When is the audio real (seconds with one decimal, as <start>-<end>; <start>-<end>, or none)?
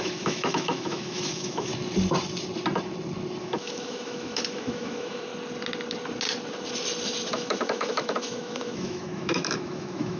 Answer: 1.7-3.4; 5.3-7.3